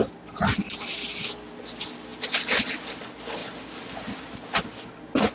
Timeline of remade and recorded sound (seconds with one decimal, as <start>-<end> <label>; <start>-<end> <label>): 0.0-5.3 recorded